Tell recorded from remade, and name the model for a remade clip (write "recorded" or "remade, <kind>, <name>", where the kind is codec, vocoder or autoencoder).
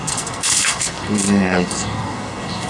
remade, codec, SNAC